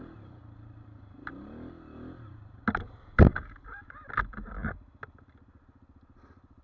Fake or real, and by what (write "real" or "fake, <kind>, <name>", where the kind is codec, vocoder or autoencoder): real